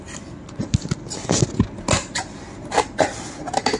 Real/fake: real